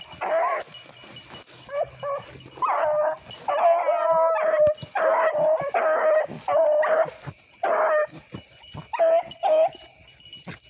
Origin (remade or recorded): recorded